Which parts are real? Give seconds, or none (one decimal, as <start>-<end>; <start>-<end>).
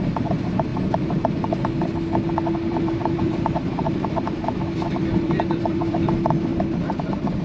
0.7-3.0; 6.5-7.4